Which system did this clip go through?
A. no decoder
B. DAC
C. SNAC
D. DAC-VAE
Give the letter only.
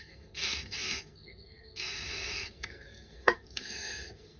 C